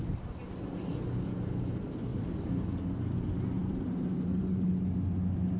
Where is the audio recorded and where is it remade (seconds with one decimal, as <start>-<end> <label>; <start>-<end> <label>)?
0.0-2.1 recorded; 2.1-2.7 remade; 2.7-3.6 recorded; 3.6-4.7 remade; 4.7-5.6 recorded